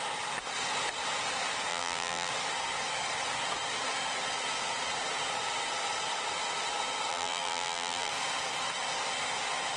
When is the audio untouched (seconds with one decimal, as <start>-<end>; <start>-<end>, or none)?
0.0-1.7; 2.3-7.1; 8.1-9.8